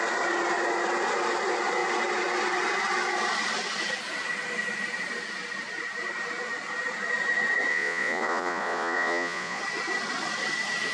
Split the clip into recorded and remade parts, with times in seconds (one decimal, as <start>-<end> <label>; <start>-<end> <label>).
0.0-7.7 recorded; 7.7-9.6 remade; 9.6-10.9 recorded